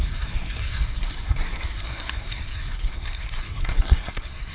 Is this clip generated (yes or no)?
yes